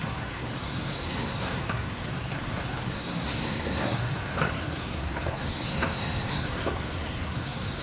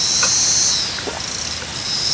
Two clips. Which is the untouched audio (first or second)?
second